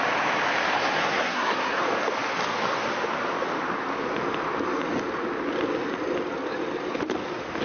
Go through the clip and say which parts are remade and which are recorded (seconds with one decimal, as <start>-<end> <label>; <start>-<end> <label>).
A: 0.0-1.0 recorded; 1.0-1.8 remade; 1.8-7.6 recorded